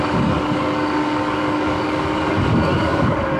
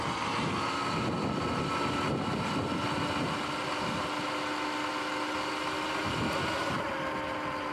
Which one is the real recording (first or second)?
second